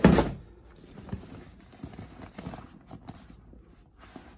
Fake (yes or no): no